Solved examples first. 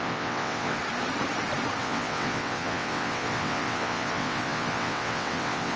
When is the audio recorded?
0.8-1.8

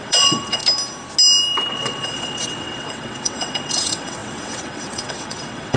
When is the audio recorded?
0.6-1.7

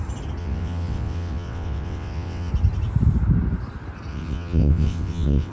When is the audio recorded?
0.0-0.4; 2.5-4.1

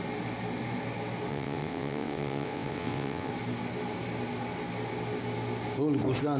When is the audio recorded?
0.0-1.3; 3.3-6.4

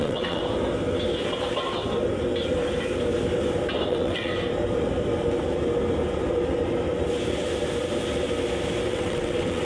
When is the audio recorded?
0.4-3.9; 4.3-8.9

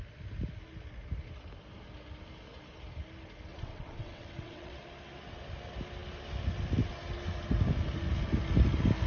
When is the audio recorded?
0.0-3.5; 4.8-9.1

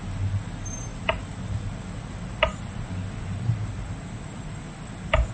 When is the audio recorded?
0.0-5.3